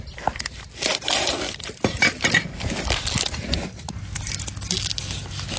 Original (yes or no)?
yes